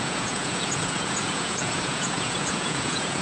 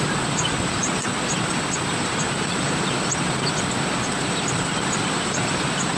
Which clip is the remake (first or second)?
first